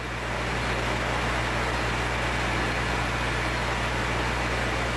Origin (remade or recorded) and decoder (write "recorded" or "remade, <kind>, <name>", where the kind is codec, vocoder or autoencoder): recorded